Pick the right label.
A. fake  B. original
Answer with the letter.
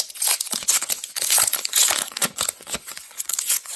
A